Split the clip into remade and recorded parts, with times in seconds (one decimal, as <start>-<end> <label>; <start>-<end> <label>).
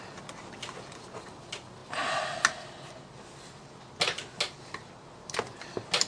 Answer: 0.0-6.1 recorded